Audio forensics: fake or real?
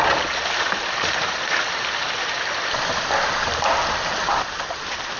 real